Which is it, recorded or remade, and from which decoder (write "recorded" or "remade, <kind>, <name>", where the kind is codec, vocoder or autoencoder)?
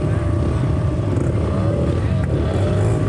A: recorded